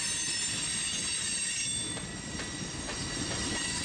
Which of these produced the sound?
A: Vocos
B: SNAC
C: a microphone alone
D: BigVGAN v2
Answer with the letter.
C